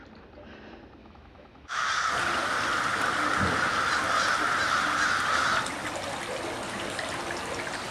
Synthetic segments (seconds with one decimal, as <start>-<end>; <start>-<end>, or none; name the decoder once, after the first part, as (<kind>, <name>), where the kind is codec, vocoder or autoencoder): 1.0-1.9 (autoencoder, DAC-VAE)